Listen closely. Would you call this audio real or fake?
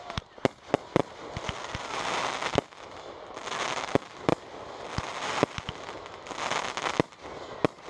real